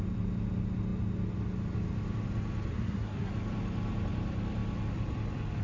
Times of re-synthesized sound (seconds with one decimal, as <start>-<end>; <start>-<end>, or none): 2.7-3.3